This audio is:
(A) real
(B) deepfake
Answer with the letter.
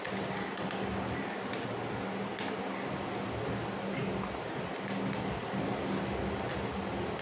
A